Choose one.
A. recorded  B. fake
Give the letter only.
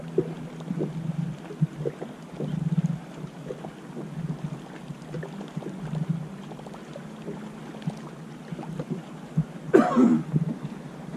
A